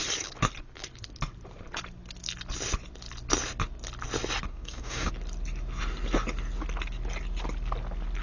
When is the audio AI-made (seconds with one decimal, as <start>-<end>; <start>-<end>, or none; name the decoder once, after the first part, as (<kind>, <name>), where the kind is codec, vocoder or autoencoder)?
4.5-5.1 (codec, DAC)